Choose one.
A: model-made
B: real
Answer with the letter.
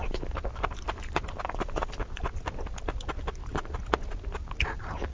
B